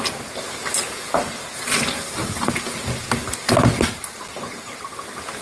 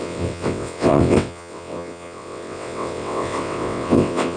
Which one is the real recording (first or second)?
first